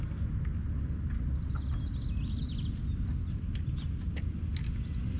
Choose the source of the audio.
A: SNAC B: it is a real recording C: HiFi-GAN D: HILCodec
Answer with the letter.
B